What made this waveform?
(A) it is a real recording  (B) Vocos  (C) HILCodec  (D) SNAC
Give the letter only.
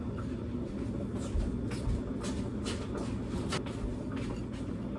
A